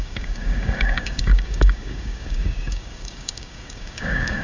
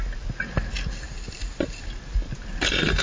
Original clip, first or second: second